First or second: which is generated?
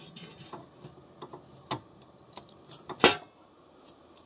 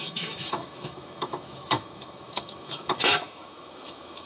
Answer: second